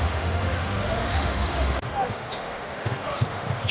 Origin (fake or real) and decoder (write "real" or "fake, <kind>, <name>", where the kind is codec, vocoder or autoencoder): fake, autoencoder, DAC-VAE